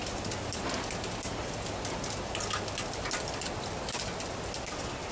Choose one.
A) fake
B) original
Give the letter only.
B